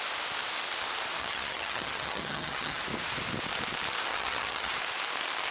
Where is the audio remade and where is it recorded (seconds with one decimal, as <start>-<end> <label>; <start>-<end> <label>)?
0.0-1.2 recorded; 1.2-2.8 remade; 2.8-4.1 recorded; 4.1-4.7 remade; 4.7-5.5 recorded